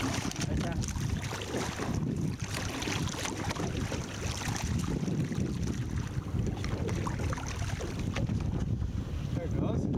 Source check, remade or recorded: recorded